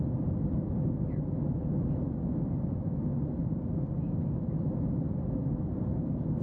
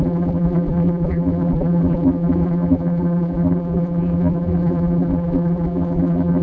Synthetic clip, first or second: second